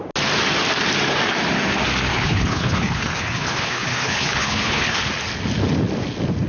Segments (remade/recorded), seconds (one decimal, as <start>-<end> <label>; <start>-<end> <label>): 0.0-2.1 recorded; 2.1-5.0 remade; 5.0-6.5 recorded